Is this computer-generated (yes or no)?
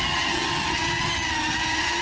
yes